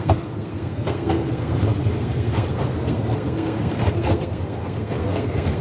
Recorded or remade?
remade